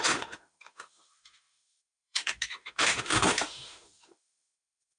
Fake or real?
fake